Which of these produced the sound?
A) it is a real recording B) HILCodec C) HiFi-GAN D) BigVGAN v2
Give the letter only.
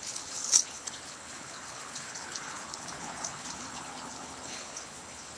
B